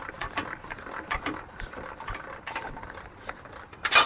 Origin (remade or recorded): remade